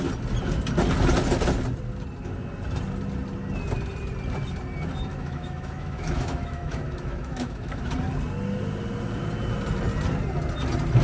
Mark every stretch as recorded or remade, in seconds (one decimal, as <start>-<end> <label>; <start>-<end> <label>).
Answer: 0.0-5.1 recorded; 5.1-7.9 remade; 7.9-11.0 recorded